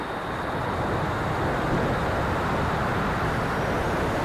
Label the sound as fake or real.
real